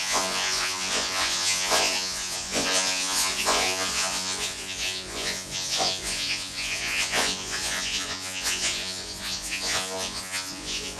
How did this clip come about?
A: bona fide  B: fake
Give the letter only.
B